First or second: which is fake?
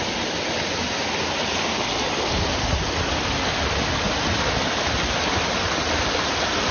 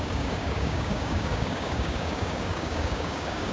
second